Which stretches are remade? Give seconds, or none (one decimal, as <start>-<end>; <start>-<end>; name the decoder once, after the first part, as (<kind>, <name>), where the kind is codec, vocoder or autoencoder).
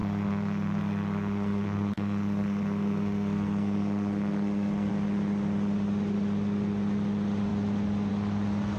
0.0-4.9 (codec, SNAC)